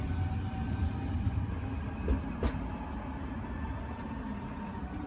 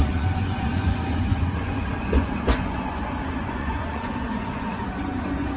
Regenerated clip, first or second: second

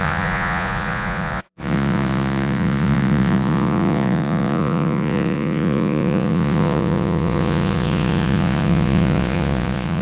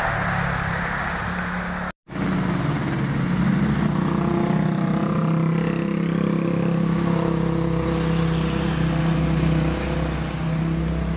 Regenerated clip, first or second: first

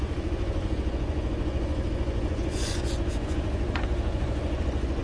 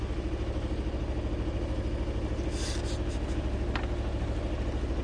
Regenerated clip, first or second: first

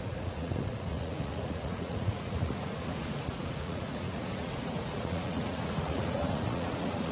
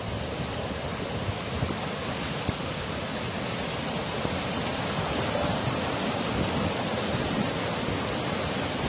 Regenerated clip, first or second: first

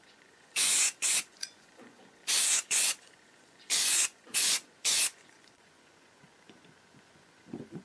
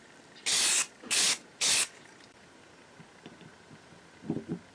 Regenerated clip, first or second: first